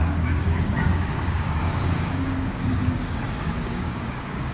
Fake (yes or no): yes